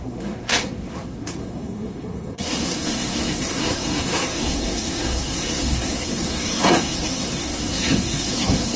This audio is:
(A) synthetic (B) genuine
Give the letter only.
A